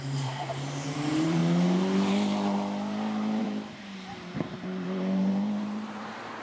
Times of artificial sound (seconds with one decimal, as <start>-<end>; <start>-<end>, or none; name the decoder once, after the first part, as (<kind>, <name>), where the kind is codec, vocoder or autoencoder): 0.0-1.4 (vocoder, BigVGAN v2); 3.4-6.4